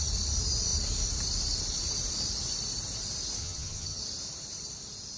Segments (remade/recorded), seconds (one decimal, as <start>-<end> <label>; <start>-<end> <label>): 0.0-3.4 recorded; 3.4-4.0 remade; 4.0-5.2 recorded